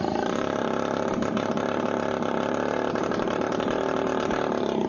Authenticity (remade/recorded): remade